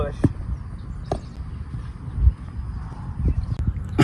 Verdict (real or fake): real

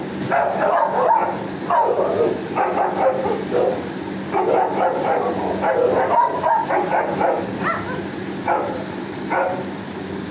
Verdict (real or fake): real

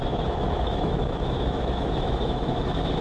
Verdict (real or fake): fake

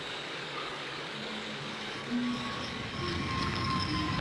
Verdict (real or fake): fake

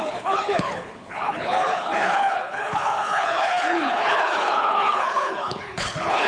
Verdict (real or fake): fake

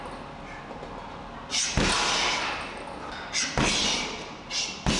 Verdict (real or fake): real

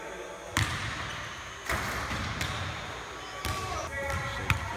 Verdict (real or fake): real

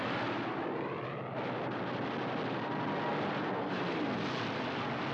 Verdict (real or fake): real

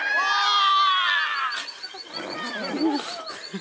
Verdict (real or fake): real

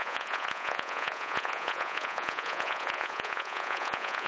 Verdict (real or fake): fake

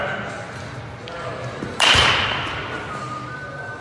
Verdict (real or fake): real